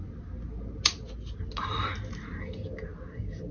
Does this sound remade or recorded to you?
recorded